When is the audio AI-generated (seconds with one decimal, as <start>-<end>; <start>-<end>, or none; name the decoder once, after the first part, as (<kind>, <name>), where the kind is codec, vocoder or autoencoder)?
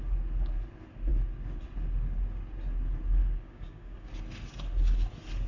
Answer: 3.2-4.1 (codec, DAC)